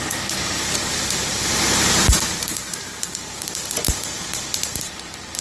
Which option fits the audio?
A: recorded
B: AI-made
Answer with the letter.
B